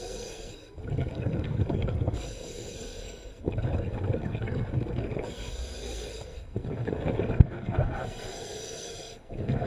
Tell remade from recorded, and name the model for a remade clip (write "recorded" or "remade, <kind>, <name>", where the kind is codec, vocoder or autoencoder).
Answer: remade, codec, SNAC